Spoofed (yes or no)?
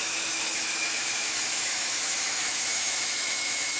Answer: yes